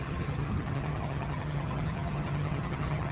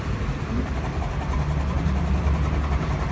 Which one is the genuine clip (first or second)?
second